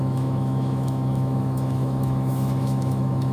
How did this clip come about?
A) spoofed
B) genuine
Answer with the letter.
A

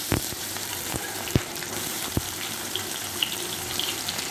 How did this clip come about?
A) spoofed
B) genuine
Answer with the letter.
A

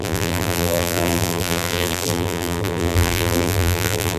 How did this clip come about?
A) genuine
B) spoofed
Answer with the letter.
B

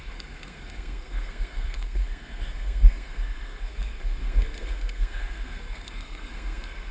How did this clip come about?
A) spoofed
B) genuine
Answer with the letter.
A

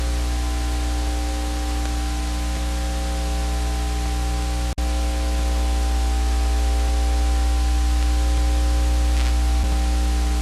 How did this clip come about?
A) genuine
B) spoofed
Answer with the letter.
A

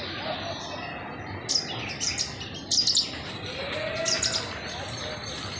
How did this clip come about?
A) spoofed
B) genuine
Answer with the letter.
B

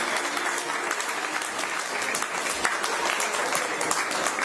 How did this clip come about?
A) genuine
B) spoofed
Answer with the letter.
A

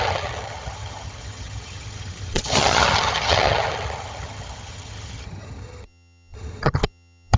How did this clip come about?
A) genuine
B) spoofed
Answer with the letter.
B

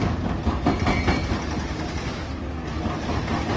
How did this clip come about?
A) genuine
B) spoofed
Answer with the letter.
A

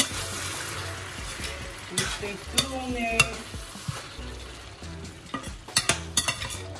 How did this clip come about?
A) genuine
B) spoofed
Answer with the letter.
A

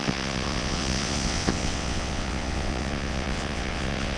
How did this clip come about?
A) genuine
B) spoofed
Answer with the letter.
B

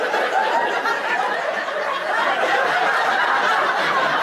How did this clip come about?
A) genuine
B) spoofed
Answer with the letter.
A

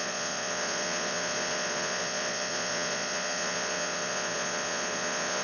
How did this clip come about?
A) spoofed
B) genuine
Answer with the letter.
A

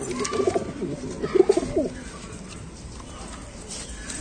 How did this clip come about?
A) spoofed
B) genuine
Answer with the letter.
B